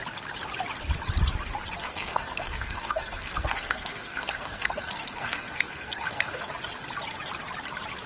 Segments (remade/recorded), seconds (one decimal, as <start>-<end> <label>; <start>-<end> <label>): 0.0-1.8 recorded; 1.8-6.5 remade; 6.5-8.1 recorded